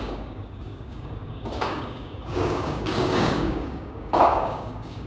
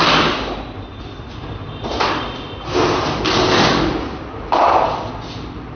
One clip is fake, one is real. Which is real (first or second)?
second